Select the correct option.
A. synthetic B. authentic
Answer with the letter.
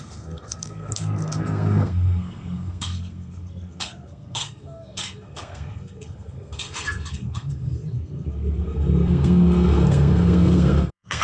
A